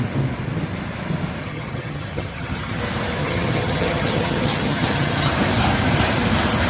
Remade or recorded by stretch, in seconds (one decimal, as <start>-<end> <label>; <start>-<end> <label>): 0.0-1.4 recorded; 1.4-2.8 remade; 2.8-3.2 recorded; 3.2-5.3 remade; 5.3-6.7 recorded

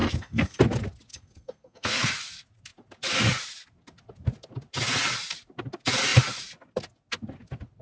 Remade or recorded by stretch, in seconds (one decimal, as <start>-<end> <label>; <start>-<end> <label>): 0.0-0.6 remade; 0.6-1.1 recorded; 1.1-2.1 remade; 2.1-7.8 recorded

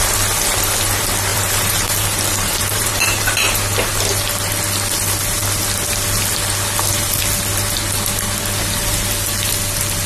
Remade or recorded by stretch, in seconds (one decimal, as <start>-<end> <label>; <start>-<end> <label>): 0.0-1.3 recorded; 1.3-3.2 remade; 3.2-10.1 recorded